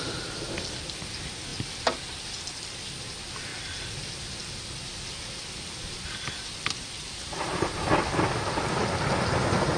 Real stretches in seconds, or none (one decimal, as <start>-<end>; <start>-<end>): 0.0-9.8